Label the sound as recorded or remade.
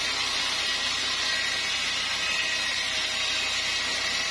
recorded